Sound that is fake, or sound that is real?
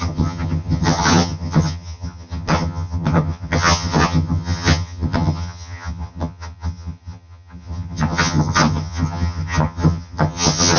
fake